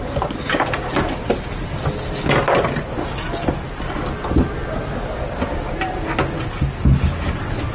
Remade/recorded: recorded